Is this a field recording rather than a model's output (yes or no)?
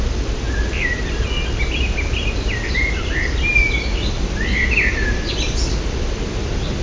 yes